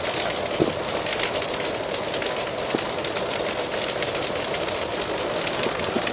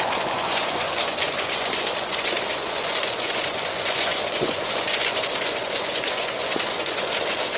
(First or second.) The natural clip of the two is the first